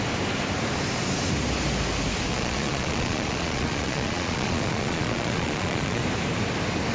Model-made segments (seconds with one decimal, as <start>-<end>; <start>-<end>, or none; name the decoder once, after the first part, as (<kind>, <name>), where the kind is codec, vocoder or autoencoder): 2.3-6.0 (vocoder, Vocos)